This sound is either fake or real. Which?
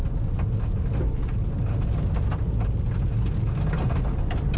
real